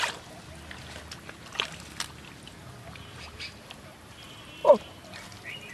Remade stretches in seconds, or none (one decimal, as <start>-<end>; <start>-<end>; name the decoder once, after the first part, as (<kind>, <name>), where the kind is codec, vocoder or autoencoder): 2.6-4.0 (vocoder, BigVGAN v2); 4.6-5.7